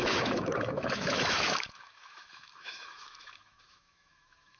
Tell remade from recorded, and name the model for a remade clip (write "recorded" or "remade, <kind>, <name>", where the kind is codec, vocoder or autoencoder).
remade, autoencoder, DAC-VAE